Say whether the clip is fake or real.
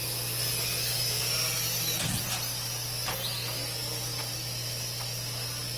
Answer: real